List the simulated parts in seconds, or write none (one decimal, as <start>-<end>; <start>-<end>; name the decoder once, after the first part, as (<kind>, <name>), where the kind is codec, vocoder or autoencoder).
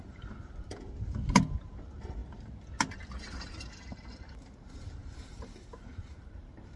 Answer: 0.0-2.2 (vocoder, BigVGAN v2); 3.2-6.8